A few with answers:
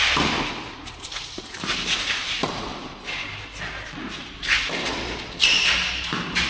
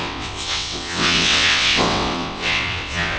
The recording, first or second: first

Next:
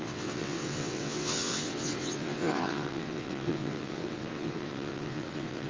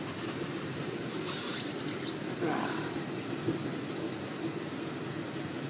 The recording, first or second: second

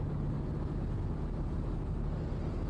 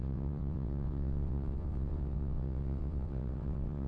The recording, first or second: first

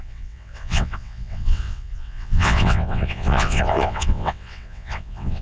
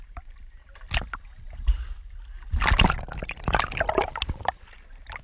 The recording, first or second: second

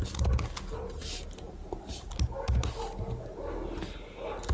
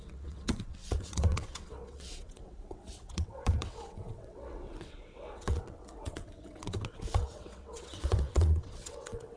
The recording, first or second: first